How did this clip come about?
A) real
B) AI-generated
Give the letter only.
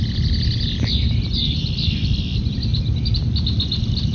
A